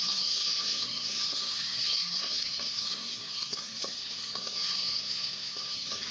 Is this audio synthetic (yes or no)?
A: yes